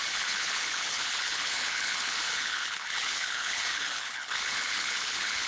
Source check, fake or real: fake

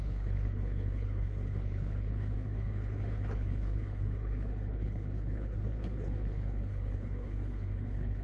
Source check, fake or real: fake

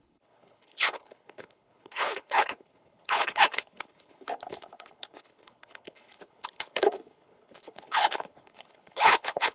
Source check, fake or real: fake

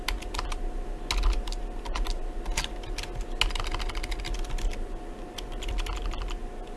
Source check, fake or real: real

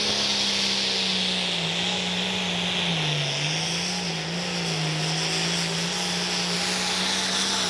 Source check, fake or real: real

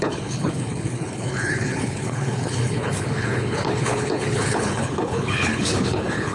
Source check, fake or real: fake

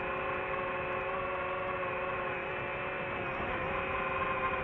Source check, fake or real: real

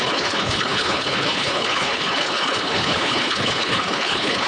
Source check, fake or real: fake